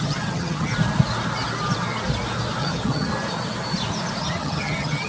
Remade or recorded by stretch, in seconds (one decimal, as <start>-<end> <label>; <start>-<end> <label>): 0.0-0.7 remade; 0.7-2.6 recorded; 2.6-3.1 remade; 3.1-4.2 recorded; 4.2-5.1 remade